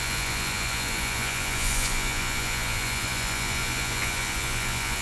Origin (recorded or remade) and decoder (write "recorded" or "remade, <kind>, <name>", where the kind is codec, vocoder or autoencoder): remade, vocoder, Vocos